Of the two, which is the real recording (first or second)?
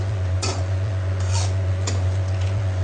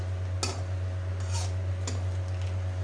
second